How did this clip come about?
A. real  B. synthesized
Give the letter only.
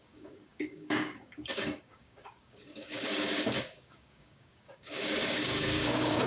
B